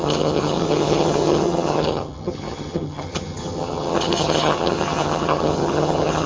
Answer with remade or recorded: remade